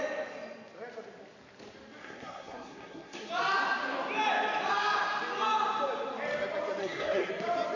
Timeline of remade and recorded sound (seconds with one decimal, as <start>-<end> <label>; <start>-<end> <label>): 0.0-2.0 recorded; 2.0-3.3 remade; 3.3-6.8 recorded; 6.8-7.3 remade; 7.3-7.8 recorded